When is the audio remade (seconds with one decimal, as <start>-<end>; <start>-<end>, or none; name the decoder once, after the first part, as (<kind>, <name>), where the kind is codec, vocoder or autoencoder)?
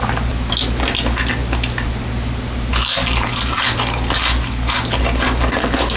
none